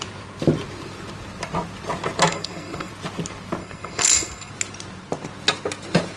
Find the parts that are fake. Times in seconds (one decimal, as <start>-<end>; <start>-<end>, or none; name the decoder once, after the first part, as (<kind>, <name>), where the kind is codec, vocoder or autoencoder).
2.3-2.9 (codec, SNAC); 3.6-4.5